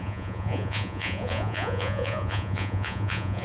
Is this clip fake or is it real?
fake